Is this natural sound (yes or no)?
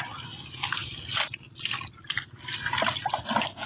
yes